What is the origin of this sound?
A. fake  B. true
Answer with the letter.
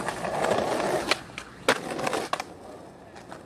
B